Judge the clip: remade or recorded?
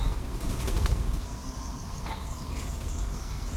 remade